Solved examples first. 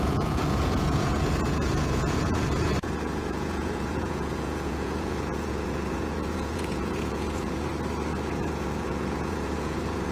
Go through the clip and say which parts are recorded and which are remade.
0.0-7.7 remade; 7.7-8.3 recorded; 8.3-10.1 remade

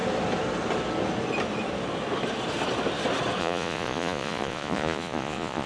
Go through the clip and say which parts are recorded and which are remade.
0.0-3.4 recorded; 3.4-5.7 remade

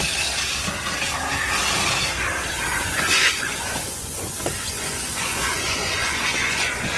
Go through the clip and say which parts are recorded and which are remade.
0.0-2.7 recorded; 2.7-7.0 remade

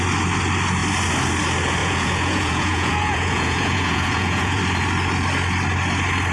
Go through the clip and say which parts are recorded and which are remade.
0.0-1.8 recorded; 1.8-4.6 remade; 4.6-6.3 recorded

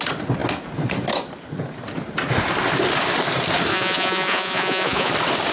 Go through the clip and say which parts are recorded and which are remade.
0.0-3.7 recorded; 3.7-5.1 remade; 5.1-5.5 recorded

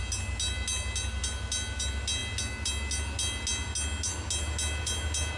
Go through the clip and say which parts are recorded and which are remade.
0.0-5.4 recorded